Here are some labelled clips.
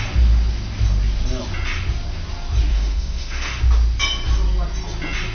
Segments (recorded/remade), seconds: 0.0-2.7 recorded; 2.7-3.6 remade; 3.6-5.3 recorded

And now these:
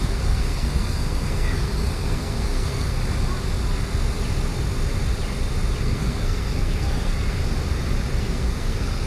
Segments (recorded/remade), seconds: 0.0-3.0 remade; 3.0-5.8 recorded; 5.8-7.4 remade; 7.4-8.2 recorded; 8.2-9.1 remade

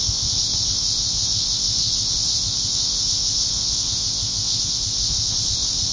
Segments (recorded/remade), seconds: 0.0-5.9 remade

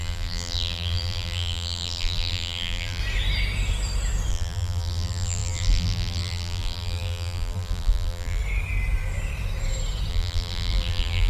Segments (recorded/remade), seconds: 0.0-3.0 remade; 3.0-4.3 recorded; 4.3-8.4 remade; 8.4-10.1 recorded; 10.1-11.3 remade

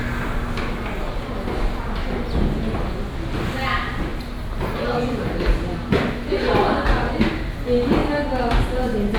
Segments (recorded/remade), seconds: 0.0-9.2 recorded

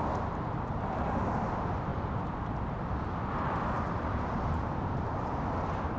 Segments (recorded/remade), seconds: 0.0-1.9 recorded; 1.9-2.7 remade; 2.7-4.0 recorded; 4.0-5.6 remade; 5.6-6.0 recorded

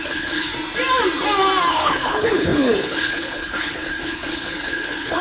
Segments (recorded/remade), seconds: 0.0-0.5 remade; 0.5-1.7 recorded; 1.7-5.2 remade